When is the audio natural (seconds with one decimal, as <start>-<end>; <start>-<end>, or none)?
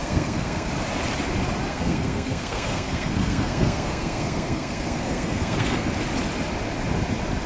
0.7-1.7; 5.9-7.5